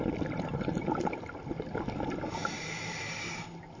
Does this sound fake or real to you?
real